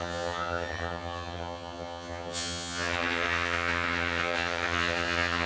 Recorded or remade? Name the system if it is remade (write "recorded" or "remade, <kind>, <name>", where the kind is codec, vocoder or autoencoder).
remade, vocoder, HiFi-GAN